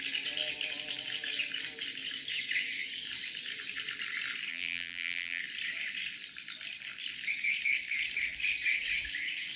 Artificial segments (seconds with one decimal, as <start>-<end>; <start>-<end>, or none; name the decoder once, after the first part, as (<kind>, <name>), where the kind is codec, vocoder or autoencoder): 4.5-5.4 (vocoder, BigVGAN v2)